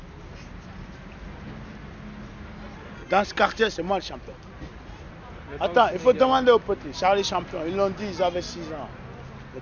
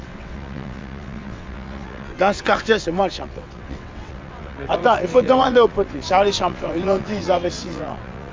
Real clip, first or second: first